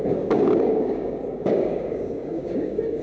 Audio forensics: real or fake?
fake